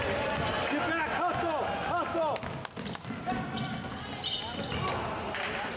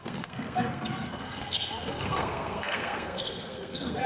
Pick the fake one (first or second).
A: second